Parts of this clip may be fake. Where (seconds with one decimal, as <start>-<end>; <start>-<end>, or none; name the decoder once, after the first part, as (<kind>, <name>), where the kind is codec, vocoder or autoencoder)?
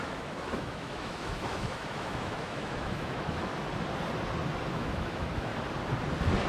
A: 0.0-3.5 (autoencoder, DAC-VAE); 4.7-5.5